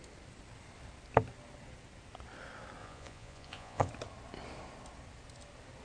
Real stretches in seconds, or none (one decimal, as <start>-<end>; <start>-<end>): 0.0-2.8; 3.9-5.8